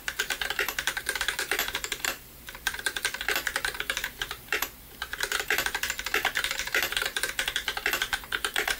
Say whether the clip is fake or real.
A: fake